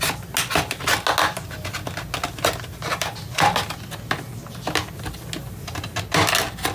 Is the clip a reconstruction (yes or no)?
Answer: no